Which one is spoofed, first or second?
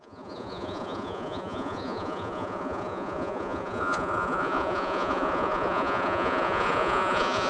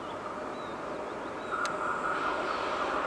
first